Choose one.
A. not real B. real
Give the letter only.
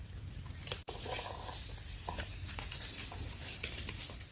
B